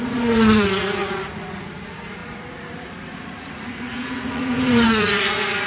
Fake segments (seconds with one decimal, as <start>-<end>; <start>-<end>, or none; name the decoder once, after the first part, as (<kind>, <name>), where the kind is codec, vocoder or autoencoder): 0.0-5.7 (vocoder, Vocos)